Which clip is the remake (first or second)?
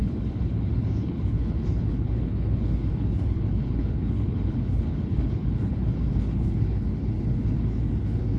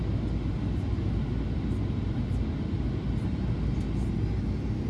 first